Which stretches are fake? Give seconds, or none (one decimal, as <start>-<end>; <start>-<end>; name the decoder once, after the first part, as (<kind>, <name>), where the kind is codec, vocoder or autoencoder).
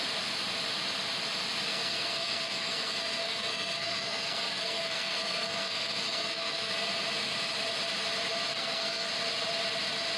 1.7-6.7 (codec, SNAC); 8.5-9.1